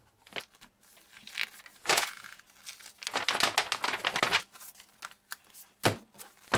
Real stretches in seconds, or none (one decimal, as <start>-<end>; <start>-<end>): 0.0-1.7; 2.4-6.6

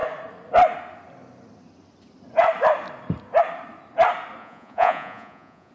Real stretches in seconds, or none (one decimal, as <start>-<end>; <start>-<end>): 0.0-4.4

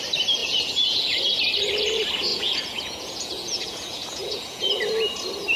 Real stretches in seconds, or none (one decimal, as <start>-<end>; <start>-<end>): 0.0-0.4; 1.2-2.3; 4.8-5.6